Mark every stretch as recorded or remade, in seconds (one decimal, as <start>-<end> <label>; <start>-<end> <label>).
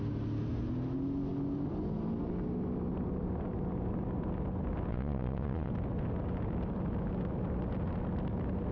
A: 0.0-4.9 recorded; 4.9-5.7 remade; 5.7-8.7 recorded